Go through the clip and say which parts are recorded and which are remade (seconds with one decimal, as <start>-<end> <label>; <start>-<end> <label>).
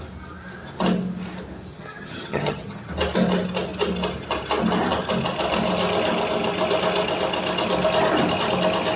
0.0-1.7 recorded; 1.7-2.9 remade; 2.9-9.0 recorded